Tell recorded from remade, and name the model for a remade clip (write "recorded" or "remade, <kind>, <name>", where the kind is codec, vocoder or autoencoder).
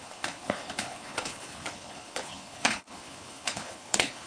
remade, codec, HILCodec